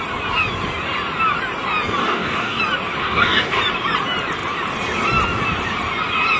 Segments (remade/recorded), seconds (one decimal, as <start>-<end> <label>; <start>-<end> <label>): 0.0-2.0 recorded; 2.0-2.6 remade; 2.6-3.0 recorded; 3.0-3.6 remade; 3.6-6.4 recorded